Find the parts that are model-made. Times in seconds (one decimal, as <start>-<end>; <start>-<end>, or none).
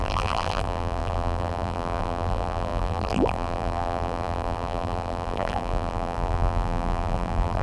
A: 0.0-7.6